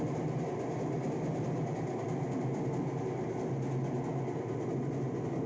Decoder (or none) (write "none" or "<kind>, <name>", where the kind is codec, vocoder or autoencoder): none